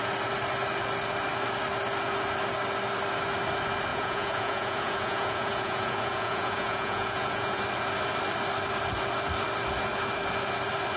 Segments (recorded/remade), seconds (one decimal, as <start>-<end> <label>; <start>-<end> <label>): 0.0-3.9 recorded; 3.9-7.6 remade; 7.6-11.0 recorded